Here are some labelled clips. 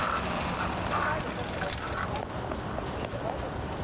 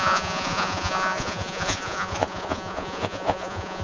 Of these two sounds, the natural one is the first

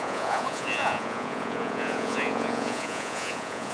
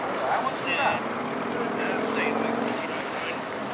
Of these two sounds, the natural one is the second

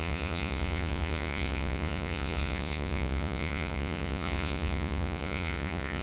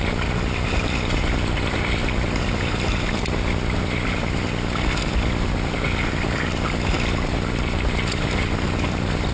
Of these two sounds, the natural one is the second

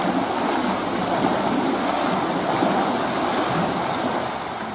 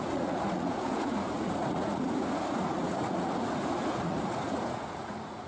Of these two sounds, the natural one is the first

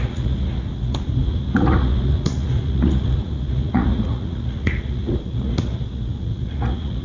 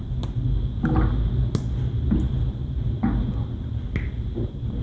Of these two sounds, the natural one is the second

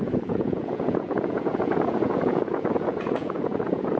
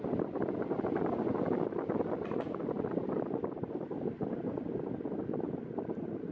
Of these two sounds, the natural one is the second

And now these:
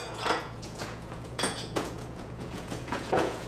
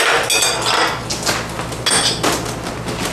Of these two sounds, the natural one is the second